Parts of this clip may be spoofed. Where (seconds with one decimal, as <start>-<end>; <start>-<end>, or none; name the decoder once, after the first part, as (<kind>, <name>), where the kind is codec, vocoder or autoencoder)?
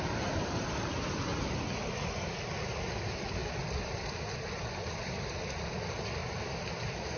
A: none